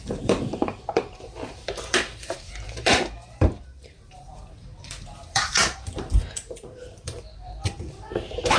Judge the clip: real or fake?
fake